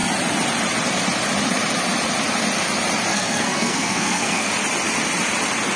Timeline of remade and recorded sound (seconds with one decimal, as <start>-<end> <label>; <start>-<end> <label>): 0.0-3.1 recorded; 3.1-4.5 remade; 4.5-5.8 recorded